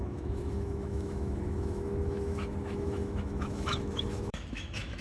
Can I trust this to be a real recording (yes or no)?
no